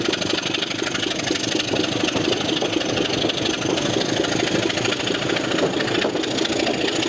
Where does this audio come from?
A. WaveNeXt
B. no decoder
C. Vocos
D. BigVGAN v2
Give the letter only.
B